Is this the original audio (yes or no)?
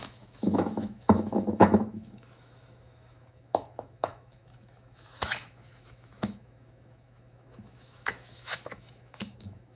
no